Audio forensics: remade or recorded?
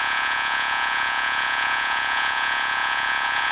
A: remade